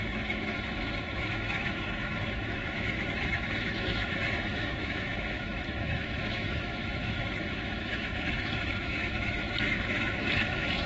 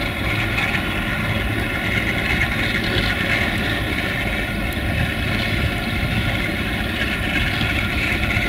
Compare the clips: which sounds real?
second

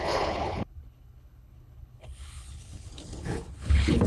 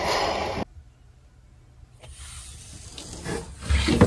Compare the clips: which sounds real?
second